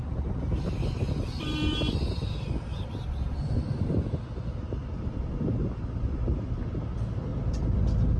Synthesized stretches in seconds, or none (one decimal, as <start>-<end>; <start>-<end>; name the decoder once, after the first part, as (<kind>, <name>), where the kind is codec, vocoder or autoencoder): none